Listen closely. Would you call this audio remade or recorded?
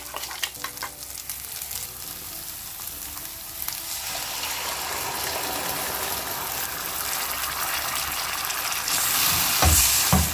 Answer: recorded